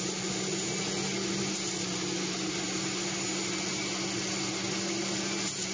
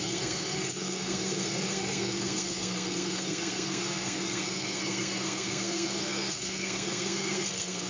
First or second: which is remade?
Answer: second